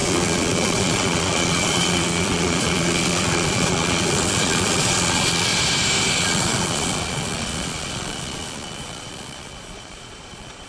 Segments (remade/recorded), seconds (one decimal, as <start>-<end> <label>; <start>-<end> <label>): 0.0-5.5 remade; 5.5-6.1 recorded; 6.1-10.7 remade

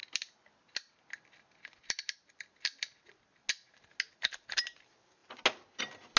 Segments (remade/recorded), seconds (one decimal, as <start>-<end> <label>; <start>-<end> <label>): 0.0-6.2 recorded

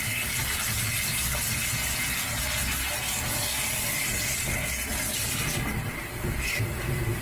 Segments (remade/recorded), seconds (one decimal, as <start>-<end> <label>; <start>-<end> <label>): 0.0-7.2 recorded